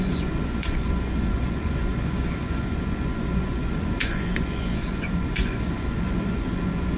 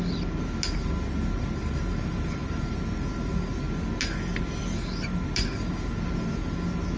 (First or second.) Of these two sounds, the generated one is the first